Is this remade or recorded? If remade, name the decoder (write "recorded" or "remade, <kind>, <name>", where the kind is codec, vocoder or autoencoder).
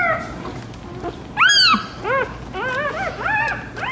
recorded